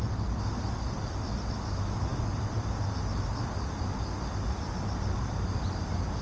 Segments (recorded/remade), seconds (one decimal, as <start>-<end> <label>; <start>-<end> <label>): 0.0-6.2 recorded